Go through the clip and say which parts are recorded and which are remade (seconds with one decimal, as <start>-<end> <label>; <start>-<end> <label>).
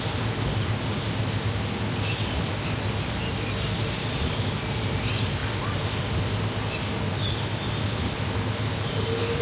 0.0-9.4 recorded